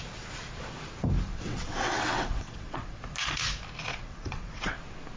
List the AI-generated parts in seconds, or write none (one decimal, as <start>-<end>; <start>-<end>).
1.3-3.0; 3.9-4.8